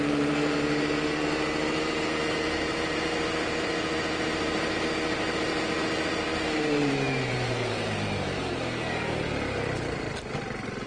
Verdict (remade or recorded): remade